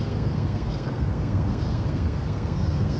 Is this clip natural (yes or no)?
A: no